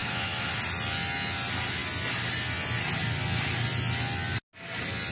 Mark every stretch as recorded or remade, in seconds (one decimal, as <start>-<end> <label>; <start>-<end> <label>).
0.0-0.5 remade; 0.5-5.1 recorded